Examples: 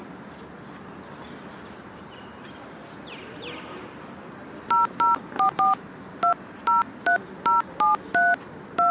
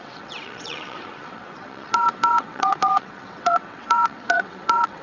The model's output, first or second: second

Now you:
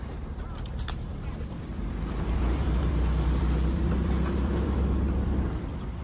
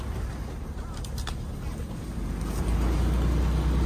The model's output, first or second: first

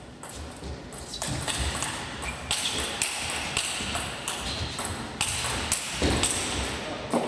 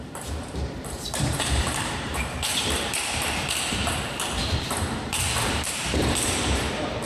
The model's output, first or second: second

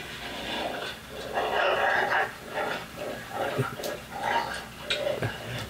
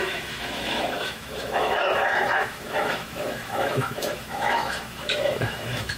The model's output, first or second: second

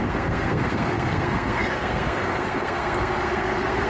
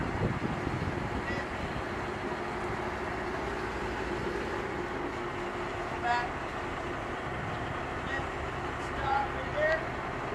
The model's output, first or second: first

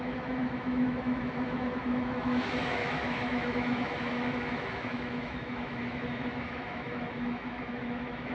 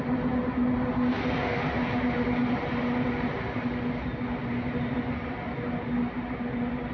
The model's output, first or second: first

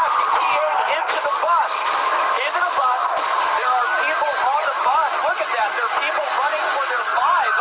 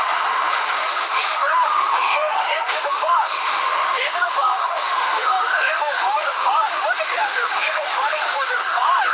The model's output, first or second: second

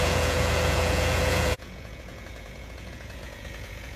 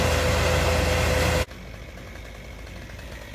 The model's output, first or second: first